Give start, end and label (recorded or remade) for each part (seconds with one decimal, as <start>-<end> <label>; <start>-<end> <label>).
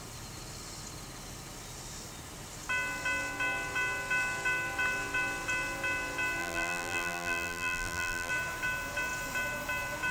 0.0-6.4 recorded; 6.4-8.3 remade; 8.3-10.1 recorded